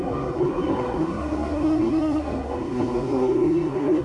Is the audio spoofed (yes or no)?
yes